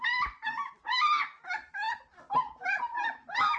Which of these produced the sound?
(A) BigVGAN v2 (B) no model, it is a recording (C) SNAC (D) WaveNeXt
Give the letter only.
B